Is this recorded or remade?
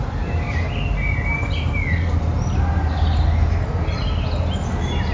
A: recorded